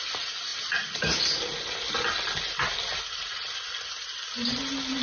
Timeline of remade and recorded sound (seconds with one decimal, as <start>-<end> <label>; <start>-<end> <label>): 0.0-5.0 recorded